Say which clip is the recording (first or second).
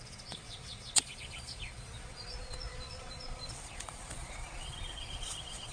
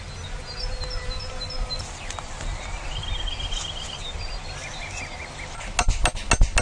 second